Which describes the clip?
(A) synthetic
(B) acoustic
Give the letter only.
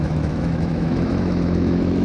A